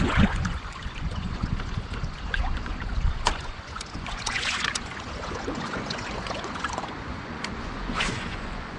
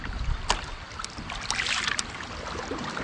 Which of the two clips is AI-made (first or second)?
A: first